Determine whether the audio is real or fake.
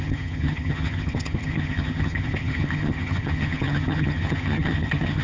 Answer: fake